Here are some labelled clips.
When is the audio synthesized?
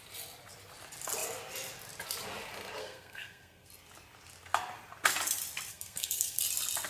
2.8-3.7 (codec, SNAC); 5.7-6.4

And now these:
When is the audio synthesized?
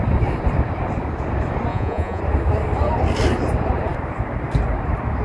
1.7-2.2 (vocoder, Vocos)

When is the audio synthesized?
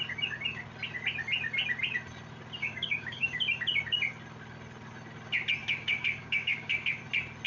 2.6-3.4 (codec, DAC); 5.6-7.0